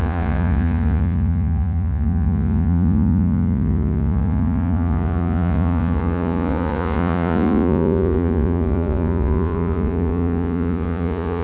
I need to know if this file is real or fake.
fake